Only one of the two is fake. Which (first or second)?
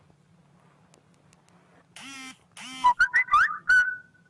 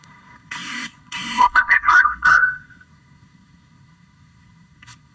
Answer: second